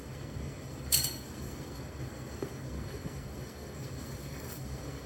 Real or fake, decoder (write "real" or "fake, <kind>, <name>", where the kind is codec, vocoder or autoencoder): fake, codec, SNAC